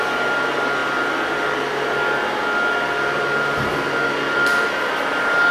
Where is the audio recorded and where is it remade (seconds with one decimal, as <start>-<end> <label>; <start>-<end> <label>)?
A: 0.0-5.5 recorded